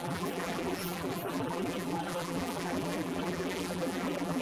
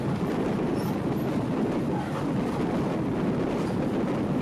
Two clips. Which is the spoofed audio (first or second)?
first